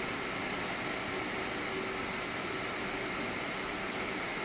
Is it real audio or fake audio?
real